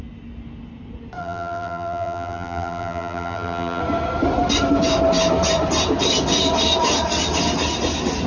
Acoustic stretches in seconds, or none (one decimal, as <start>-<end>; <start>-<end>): 0.0-1.2; 3.8-8.3